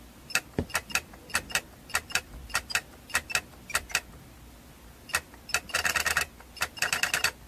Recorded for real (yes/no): yes